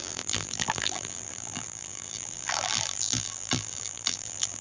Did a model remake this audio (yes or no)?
yes